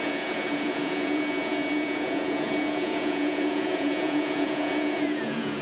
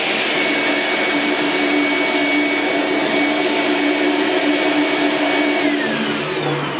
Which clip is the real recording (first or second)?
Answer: second